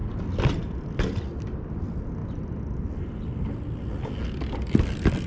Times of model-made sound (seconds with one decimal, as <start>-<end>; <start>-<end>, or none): none